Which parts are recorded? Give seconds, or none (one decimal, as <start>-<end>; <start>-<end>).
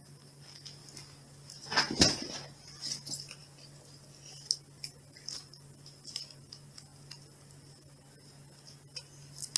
0.0-9.6